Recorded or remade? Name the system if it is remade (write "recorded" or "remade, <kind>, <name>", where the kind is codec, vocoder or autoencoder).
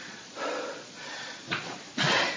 remade, vocoder, Vocos